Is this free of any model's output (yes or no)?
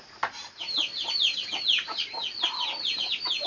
yes